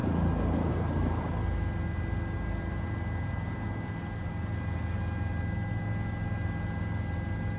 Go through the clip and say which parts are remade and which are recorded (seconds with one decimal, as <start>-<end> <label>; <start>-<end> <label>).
0.0-7.6 recorded